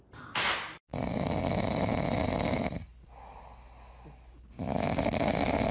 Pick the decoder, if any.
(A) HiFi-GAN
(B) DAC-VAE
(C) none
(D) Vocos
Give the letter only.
C